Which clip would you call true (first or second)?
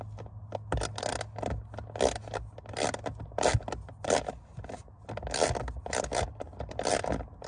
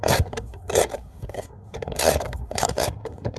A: first